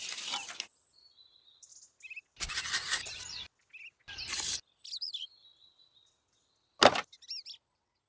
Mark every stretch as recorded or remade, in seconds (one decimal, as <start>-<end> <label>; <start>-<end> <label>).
0.0-8.1 recorded